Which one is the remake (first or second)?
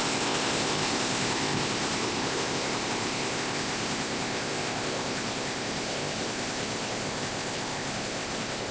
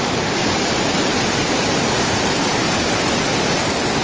first